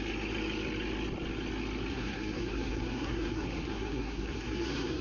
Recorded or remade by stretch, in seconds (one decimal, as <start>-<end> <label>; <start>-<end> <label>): 0.0-1.9 recorded; 1.9-5.0 remade

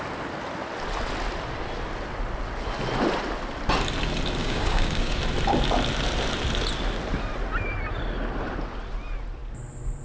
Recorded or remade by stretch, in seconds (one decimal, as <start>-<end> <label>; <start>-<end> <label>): 0.0-4.4 recorded; 4.4-5.2 remade; 5.2-10.0 recorded

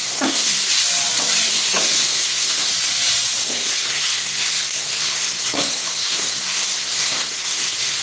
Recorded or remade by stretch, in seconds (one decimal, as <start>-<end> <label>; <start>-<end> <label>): 0.0-0.7 remade; 0.7-1.5 recorded; 1.5-2.7 remade; 2.7-3.4 recorded; 3.4-8.0 remade

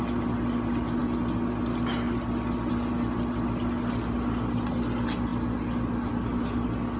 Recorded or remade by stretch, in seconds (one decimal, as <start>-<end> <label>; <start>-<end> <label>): 0.0-7.0 recorded